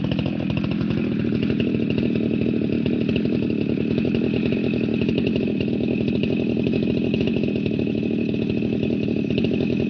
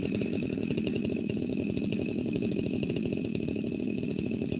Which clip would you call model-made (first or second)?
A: second